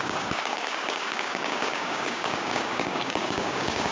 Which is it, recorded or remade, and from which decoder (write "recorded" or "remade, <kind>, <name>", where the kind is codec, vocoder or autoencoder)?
remade, codec, DAC